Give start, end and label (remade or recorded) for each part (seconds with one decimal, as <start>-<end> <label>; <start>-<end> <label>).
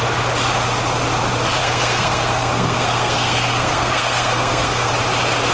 0.0-1.6 recorded; 1.6-4.9 remade; 4.9-5.5 recorded